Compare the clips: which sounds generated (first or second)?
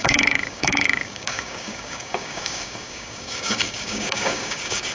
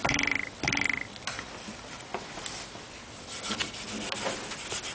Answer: first